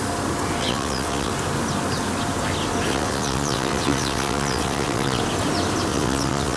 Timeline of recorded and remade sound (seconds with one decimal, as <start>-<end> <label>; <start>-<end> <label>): 0.0-0.6 recorded; 0.6-1.3 remade; 1.3-2.9 recorded; 2.9-5.2 remade; 5.2-5.9 recorded; 5.9-6.6 remade

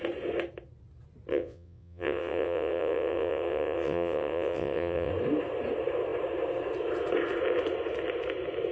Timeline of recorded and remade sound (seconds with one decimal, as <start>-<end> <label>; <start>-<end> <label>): 0.0-1.3 recorded; 1.3-5.1 remade; 5.1-8.7 recorded

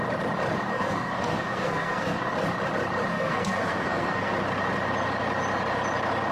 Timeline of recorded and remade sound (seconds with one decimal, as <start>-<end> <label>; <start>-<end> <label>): 0.0-0.7 recorded; 0.7-2.3 remade; 2.3-3.1 recorded; 3.1-4.3 remade; 4.3-6.3 recorded

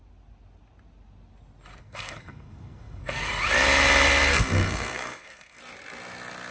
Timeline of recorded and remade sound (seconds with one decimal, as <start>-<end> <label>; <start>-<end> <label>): 0.0-1.8 recorded; 1.8-3.3 remade; 3.3-4.3 recorded; 4.3-5.6 remade; 5.6-6.5 recorded

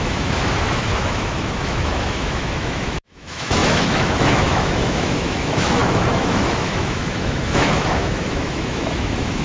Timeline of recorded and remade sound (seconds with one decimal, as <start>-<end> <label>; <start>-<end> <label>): 0.0-9.4 remade

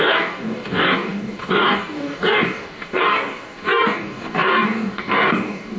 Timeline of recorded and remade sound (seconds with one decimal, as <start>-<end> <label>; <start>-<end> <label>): 0.0-5.8 remade